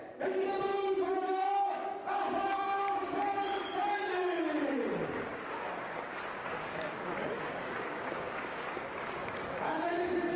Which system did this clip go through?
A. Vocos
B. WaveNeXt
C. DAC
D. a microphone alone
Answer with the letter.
C